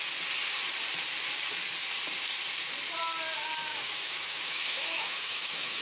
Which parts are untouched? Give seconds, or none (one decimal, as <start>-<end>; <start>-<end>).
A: 0.0-3.7